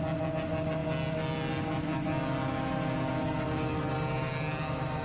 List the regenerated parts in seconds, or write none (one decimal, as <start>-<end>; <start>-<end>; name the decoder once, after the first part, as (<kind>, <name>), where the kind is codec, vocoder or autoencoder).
none

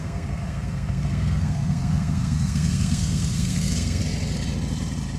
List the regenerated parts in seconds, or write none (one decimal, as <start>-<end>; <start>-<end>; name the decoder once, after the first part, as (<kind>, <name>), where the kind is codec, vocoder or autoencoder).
0.0-4.0 (codec, SNAC)